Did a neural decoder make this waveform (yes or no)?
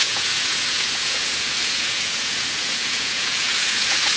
yes